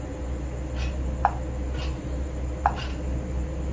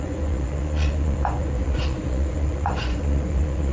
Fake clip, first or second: second